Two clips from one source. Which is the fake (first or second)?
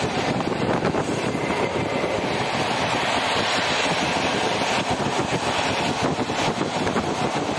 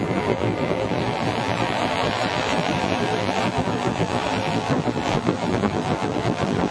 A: second